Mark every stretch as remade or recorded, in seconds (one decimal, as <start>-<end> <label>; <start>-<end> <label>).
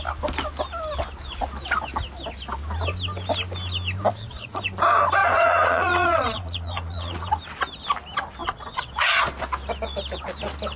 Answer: 0.0-4.1 recorded; 4.1-4.6 remade; 4.6-5.2 recorded; 5.2-7.3 remade; 7.3-8.4 recorded; 8.4-9.4 remade; 9.4-10.8 recorded